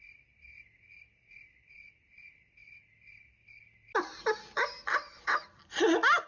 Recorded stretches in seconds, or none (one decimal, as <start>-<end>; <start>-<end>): 0.0-4.9; 5.4-6.3